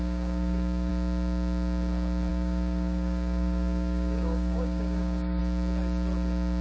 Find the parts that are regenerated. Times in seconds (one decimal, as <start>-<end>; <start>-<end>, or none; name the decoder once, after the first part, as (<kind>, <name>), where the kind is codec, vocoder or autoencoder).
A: 0.0-0.9 (codec, DAC); 2.3-5.4

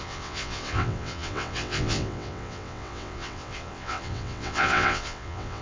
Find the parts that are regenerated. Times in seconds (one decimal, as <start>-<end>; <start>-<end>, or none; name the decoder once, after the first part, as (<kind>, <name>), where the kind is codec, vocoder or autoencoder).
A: 0.0-5.6 (vocoder, WaveNeXt)

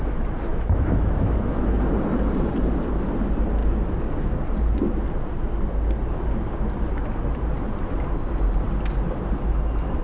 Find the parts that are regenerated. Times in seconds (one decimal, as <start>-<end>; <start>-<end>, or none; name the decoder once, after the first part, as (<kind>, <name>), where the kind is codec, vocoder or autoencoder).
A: 0.5-1.9 (autoencoder, DAC-VAE)

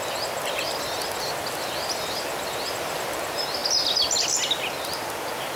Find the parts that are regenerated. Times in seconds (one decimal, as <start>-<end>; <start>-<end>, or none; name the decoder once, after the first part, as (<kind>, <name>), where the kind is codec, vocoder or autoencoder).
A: none

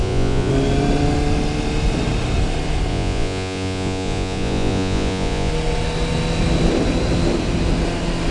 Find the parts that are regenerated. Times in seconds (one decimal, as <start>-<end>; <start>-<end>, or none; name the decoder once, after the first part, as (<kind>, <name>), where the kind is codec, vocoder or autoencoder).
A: 0.0-0.5 (vocoder, Vocos); 2.9-5.5

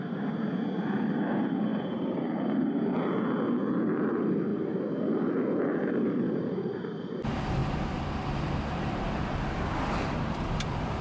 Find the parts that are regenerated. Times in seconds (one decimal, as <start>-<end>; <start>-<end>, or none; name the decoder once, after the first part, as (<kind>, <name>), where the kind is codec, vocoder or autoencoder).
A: none

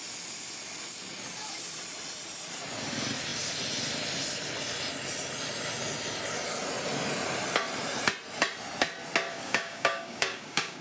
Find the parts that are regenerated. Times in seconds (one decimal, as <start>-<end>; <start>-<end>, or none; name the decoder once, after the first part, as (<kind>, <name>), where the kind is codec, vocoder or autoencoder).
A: 9.3-10.8 (codec, DAC)

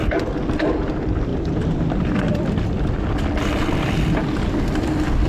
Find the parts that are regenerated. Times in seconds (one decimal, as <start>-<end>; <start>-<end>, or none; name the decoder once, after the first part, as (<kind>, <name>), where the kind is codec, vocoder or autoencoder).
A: none